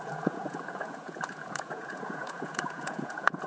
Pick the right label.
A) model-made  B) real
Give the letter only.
A